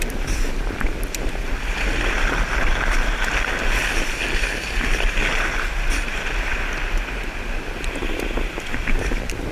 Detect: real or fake real